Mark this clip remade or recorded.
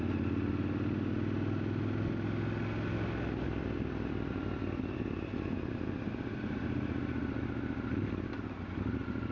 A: recorded